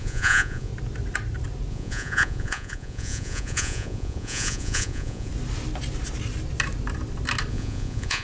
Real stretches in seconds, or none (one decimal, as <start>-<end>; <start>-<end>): 0.7-1.7; 5.3-7.5